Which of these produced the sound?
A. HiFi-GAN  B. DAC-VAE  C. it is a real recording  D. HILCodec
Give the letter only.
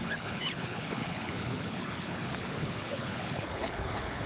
D